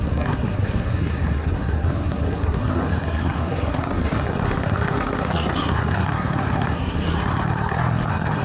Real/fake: fake